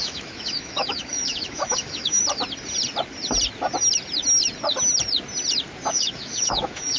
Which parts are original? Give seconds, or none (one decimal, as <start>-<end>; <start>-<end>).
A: 2.2-5.9